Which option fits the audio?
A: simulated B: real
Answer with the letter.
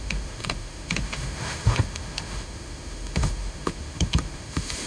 A